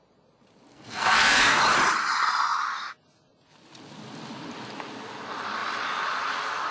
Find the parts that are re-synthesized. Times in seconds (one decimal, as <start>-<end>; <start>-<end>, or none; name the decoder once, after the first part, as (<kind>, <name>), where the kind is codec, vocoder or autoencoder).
0.7-1.6 (codec, SNAC)